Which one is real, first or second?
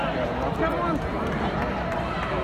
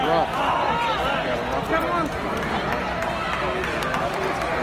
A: second